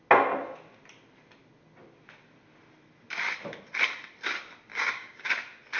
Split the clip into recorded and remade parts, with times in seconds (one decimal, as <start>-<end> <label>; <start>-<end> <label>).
0.0-4.7 recorded; 4.7-5.3 remade; 5.3-5.8 recorded